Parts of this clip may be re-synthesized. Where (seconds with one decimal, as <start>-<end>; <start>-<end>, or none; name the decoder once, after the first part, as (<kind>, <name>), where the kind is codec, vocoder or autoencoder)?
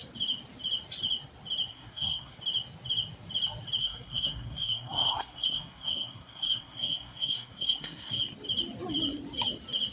1.7-2.4 (codec, SNAC); 3.8-8.2